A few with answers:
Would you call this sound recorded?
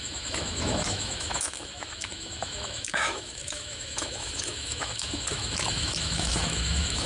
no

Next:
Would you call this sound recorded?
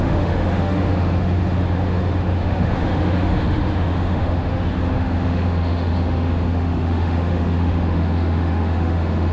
no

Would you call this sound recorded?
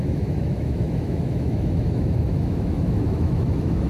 no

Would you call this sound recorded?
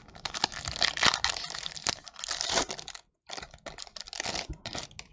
yes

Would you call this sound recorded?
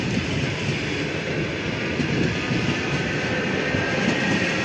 yes